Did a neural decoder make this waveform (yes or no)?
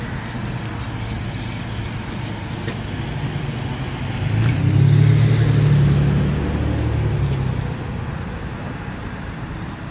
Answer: no